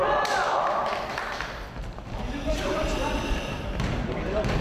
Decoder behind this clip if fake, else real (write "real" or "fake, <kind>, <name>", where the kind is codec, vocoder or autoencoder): fake, vocoder, BigVGAN v2